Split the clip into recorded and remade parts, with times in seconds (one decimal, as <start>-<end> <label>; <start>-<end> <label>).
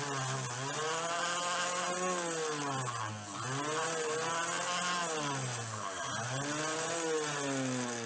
0.0-8.1 recorded